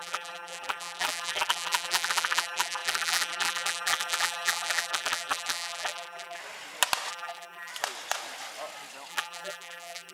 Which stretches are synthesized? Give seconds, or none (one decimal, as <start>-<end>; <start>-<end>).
0.0-6.4; 7.1-7.7; 9.1-10.1